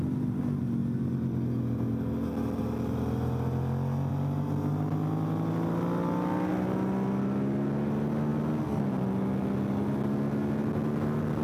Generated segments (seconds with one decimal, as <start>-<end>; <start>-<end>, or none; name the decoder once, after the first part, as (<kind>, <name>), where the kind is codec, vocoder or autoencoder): none